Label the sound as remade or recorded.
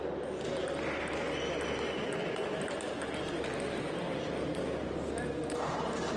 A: recorded